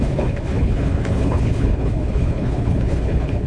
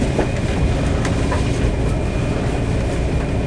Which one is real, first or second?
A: second